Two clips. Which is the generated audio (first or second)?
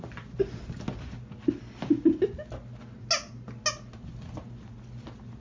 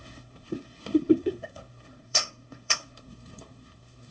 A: second